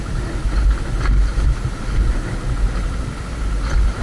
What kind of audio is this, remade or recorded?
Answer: recorded